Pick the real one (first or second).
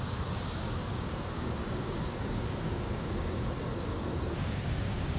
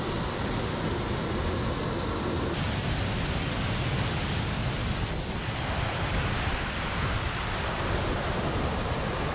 second